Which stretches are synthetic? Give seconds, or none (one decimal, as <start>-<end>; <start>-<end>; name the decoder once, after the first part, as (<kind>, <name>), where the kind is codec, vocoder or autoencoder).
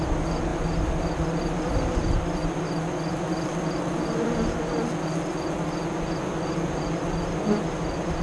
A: 0.5-2.4 (vocoder, BigVGAN v2)